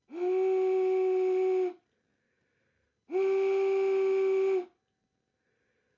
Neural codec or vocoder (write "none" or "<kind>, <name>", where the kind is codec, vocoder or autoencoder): none